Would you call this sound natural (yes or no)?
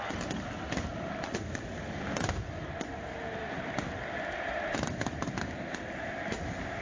yes